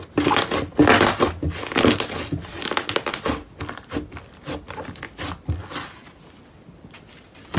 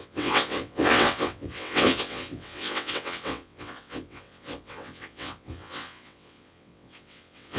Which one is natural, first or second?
first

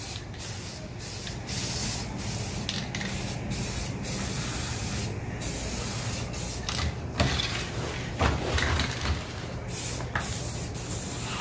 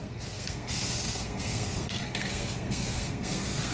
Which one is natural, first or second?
first